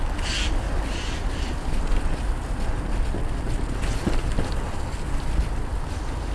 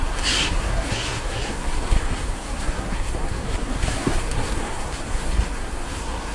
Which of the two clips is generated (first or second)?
second